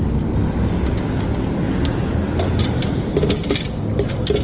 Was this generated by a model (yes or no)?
no